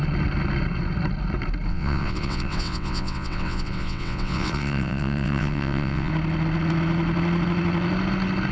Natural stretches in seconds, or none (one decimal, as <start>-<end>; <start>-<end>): 0.0-1.7; 6.1-8.5